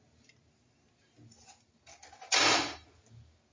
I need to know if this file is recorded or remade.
recorded